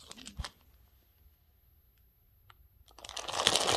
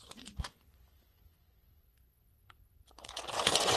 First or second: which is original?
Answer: first